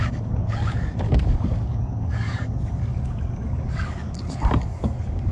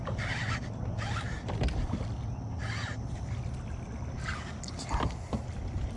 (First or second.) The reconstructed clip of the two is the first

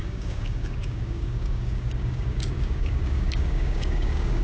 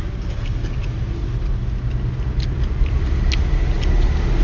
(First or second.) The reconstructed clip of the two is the first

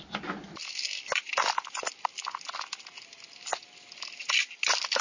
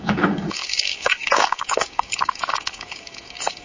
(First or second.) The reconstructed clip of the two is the second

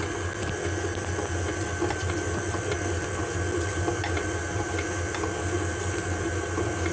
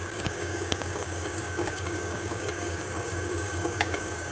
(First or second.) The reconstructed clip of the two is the second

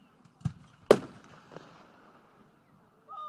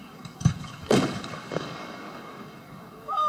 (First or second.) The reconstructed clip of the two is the second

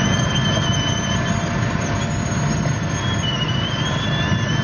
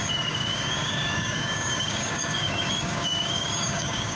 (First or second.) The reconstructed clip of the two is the second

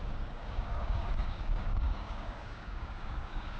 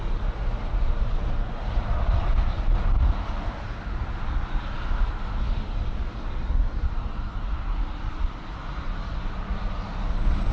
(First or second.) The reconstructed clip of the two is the first